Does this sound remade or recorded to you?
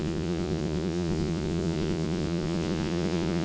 remade